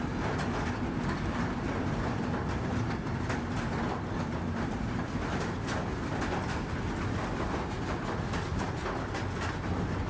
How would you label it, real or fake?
real